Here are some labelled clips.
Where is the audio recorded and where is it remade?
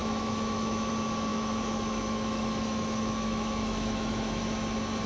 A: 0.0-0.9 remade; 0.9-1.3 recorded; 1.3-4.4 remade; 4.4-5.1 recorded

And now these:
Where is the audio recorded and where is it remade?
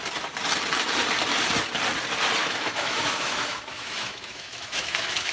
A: 0.0-2.4 recorded; 2.4-5.3 remade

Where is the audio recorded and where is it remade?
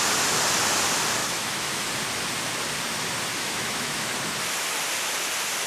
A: 0.0-1.2 recorded; 1.2-1.9 remade; 1.9-3.3 recorded; 3.3-4.1 remade; 4.1-5.7 recorded